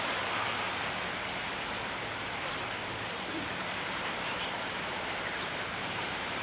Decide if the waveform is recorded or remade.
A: remade